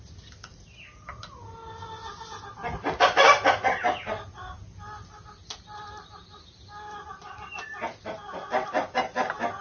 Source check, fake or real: real